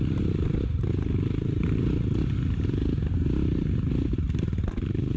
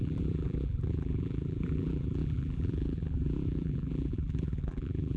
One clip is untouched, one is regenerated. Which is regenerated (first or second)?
second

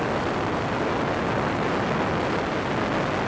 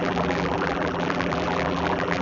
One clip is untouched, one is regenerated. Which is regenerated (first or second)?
second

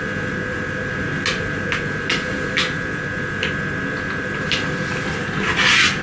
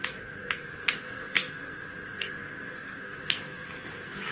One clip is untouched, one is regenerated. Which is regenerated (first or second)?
second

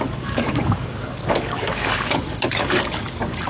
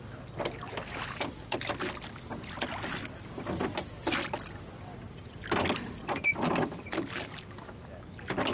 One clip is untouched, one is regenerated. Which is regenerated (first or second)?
first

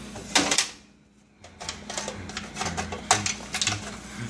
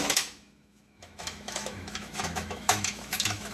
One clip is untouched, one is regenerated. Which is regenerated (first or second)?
second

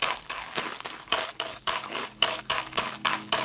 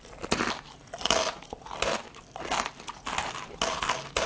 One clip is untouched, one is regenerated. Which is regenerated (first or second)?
first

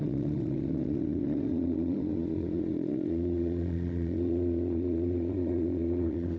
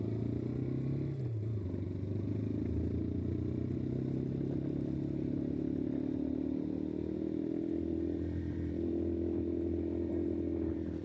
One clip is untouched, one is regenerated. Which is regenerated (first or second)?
first